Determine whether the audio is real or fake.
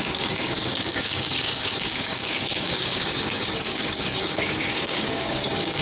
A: fake